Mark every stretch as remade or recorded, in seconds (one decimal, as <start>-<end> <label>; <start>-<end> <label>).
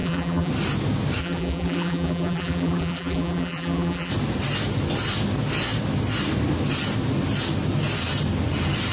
0.0-0.5 remade; 0.5-1.2 recorded; 1.2-4.1 remade; 4.1-8.9 recorded